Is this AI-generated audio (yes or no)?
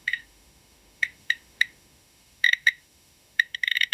yes